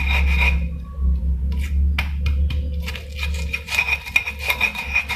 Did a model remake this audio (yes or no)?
no